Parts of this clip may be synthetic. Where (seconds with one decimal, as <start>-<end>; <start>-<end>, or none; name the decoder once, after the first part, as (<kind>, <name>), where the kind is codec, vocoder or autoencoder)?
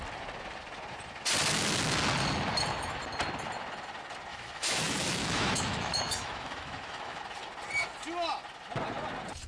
4.3-7.2 (autoencoder, DAC-VAE)